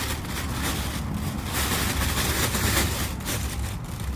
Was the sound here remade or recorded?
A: remade